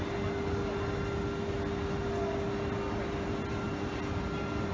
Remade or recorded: recorded